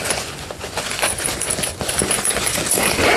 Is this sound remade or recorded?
remade